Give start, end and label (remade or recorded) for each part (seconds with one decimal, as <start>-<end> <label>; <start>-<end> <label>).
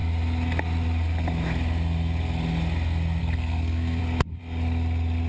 0.0-3.2 recorded; 3.2-4.0 remade; 4.0-5.3 recorded